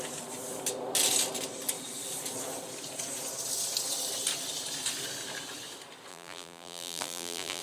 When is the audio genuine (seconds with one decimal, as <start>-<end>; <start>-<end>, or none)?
0.0-6.1